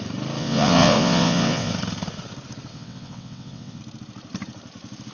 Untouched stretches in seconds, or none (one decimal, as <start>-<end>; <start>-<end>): 0.0-0.4; 1.7-2.7; 3.8-5.1